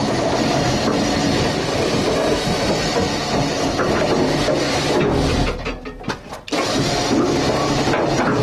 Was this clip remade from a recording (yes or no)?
no